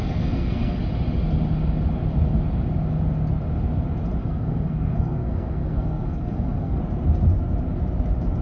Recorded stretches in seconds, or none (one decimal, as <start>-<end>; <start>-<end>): 0.8-4.2; 6.8-8.4